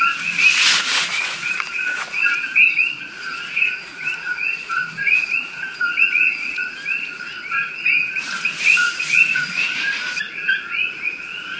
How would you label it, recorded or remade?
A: remade